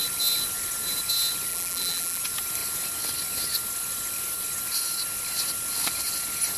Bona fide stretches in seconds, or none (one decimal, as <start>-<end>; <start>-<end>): 0.0-1.5; 2.2-6.6